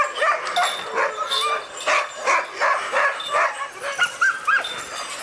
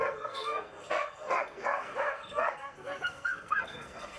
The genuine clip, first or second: first